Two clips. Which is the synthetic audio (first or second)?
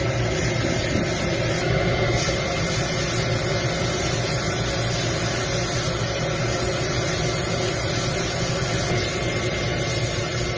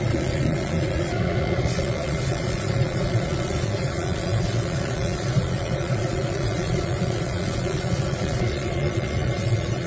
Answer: second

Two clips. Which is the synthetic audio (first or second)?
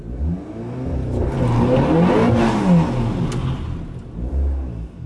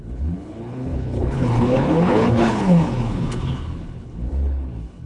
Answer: second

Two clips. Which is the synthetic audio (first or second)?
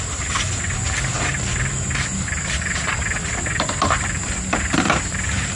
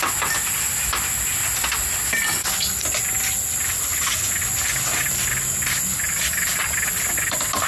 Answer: first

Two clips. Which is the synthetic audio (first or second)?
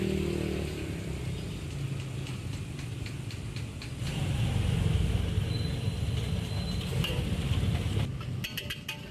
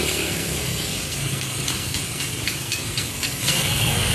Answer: second